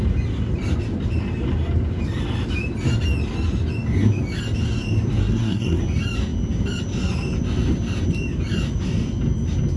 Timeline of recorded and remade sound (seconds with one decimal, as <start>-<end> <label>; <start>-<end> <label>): 0.0-5.2 recorded; 5.2-5.8 remade; 5.8-9.8 recorded